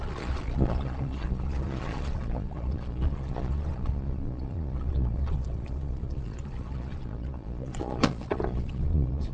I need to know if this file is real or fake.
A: fake